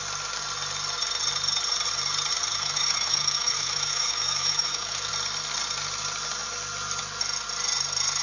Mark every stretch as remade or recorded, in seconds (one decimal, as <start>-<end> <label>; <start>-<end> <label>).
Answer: 0.0-2.5 recorded; 2.5-5.1 remade; 5.1-8.2 recorded